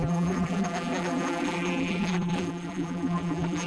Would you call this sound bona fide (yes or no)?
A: no